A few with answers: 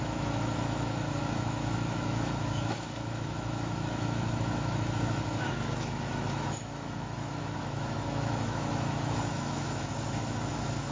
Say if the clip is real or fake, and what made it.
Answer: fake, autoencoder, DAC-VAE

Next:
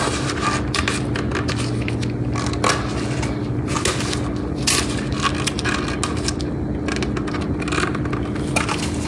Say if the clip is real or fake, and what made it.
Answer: real